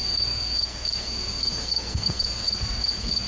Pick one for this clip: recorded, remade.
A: remade